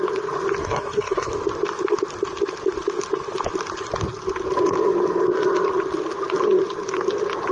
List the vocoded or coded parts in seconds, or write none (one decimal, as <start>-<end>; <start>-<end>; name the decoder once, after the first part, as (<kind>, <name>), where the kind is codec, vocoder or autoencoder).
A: 0.6-1.3 (codec, SNAC)